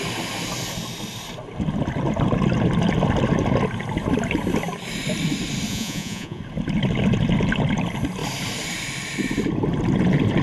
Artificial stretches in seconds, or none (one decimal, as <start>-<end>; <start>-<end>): 5.7-6.4